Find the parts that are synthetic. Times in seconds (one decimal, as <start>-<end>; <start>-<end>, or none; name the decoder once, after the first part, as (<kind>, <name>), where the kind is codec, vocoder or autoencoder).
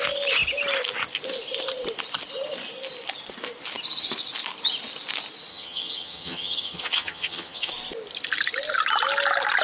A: 5.5-7.7 (vocoder, HiFi-GAN)